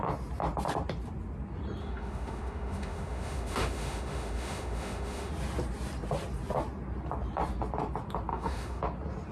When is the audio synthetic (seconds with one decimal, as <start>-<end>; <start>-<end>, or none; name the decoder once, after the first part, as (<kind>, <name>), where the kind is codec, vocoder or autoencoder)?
1.8-5.3 (autoencoder, DAC-VAE); 8.3-8.8